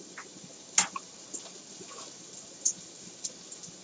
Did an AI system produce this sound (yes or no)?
no